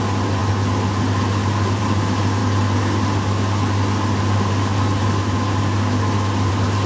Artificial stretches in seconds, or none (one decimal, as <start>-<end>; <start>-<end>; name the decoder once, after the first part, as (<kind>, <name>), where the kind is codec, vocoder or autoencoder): none